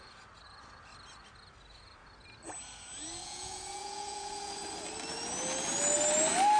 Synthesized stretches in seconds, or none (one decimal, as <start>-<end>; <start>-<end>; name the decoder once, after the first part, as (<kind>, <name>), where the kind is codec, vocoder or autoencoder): 3.2-4.5 (vocoder, Vocos)